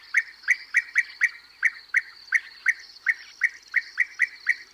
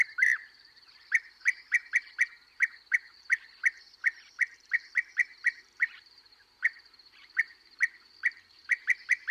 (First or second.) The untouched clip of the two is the first